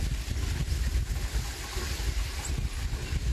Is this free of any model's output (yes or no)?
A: yes